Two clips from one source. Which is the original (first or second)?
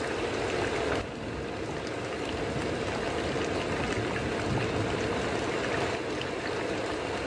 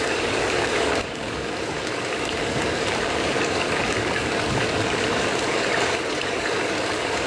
first